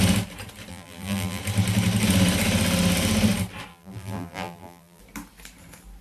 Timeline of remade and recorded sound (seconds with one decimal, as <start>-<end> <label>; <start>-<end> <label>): 0.0-0.7 recorded; 0.7-1.4 remade; 1.4-3.7 recorded; 3.7-5.0 remade; 5.0-6.0 recorded